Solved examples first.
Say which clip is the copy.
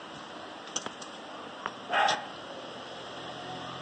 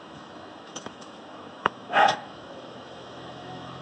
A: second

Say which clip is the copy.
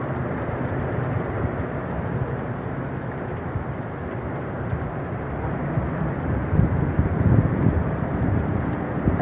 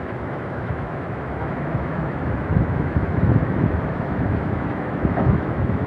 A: second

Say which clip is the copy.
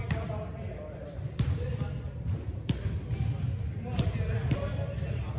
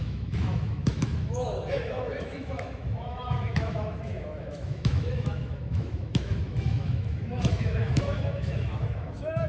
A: second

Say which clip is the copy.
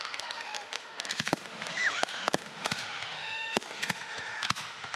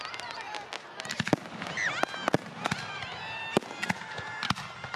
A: first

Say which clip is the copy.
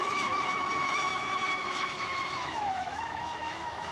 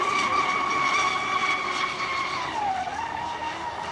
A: first